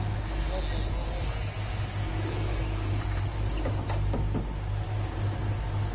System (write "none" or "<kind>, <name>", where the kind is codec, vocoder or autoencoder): none